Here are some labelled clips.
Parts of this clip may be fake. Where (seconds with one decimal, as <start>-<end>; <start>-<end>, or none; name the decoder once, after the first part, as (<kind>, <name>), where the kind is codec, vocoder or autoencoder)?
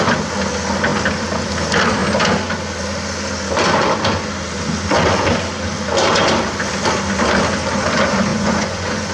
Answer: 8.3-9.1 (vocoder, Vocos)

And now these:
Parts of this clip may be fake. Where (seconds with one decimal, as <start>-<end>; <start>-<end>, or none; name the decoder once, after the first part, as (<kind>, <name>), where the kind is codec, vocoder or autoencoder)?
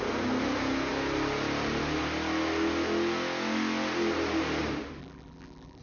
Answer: 5.0-5.8 (vocoder, BigVGAN v2)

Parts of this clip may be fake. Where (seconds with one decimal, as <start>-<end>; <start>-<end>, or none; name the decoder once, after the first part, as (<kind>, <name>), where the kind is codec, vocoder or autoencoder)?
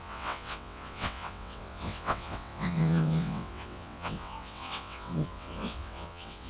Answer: 0.0-6.5 (vocoder, WaveNeXt)